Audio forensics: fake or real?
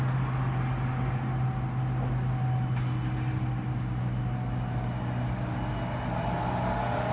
real